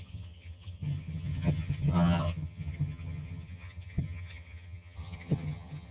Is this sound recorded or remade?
remade